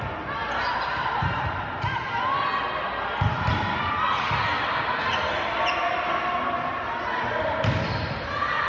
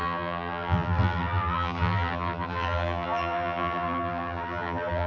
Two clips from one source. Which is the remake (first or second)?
second